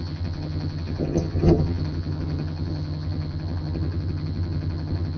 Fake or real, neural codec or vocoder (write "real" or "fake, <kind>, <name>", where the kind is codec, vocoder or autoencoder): fake, vocoder, HiFi-GAN